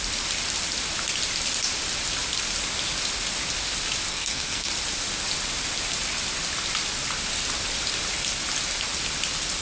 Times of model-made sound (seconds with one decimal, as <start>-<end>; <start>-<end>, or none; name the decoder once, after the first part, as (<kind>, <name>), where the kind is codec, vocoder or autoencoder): 4.1-4.7 (codec, SNAC)